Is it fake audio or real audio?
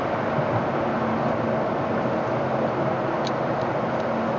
real